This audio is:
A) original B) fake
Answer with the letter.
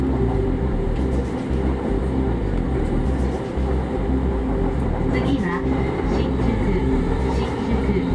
A